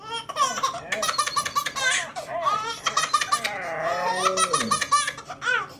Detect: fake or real real